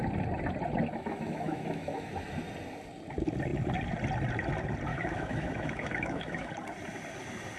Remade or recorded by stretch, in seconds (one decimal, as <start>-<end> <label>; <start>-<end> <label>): 0.0-0.9 recorded; 0.9-2.1 remade; 2.1-4.9 recorded; 4.9-6.5 remade; 6.5-7.6 recorded